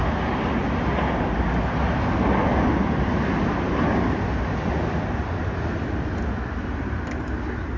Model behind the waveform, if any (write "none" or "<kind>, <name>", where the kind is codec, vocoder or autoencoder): none